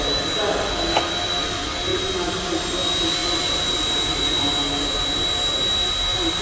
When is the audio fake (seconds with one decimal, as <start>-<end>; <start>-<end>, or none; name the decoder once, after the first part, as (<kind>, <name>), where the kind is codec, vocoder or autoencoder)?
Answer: none